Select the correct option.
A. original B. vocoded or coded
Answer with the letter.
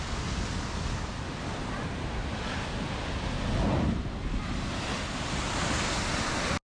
A